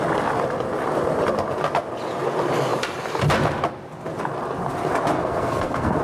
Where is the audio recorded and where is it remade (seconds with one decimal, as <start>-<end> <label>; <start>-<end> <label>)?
0.0-5.1 recorded; 5.1-6.0 remade

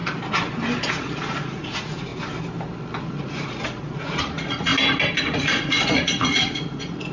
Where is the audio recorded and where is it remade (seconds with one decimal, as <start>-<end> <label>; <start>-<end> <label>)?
0.0-0.9 recorded; 0.9-2.1 remade; 2.1-3.0 recorded; 3.0-4.7 remade; 4.7-5.2 recorded; 5.2-7.1 remade

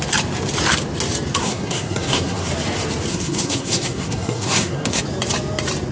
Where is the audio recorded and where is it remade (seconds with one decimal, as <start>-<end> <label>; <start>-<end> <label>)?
0.0-1.4 recorded; 1.4-2.5 remade; 2.5-3.1 recorded; 3.1-5.0 remade; 5.0-5.9 recorded

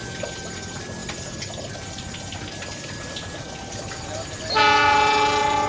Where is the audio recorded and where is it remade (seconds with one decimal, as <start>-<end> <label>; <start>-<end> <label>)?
0.0-5.7 recorded

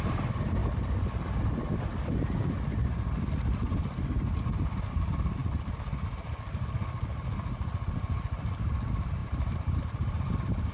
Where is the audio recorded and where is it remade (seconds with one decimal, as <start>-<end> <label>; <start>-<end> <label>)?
0.0-9.2 recorded; 9.2-10.7 remade

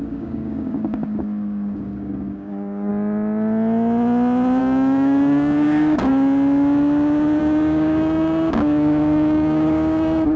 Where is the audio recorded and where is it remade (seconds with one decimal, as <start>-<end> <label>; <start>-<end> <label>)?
0.0-2.9 remade; 2.9-4.6 recorded; 4.6-6.1 remade; 6.1-7.4 recorded; 7.4-10.4 remade

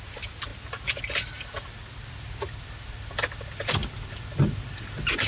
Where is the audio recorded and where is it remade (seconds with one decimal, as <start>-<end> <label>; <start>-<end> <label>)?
0.0-0.5 remade; 0.5-2.1 recorded; 2.1-5.3 remade